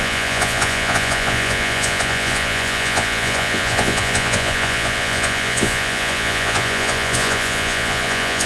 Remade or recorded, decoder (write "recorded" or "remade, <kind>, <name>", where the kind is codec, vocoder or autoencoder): remade, vocoder, Vocos